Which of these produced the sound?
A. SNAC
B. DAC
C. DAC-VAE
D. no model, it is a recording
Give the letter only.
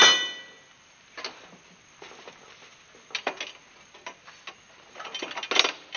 D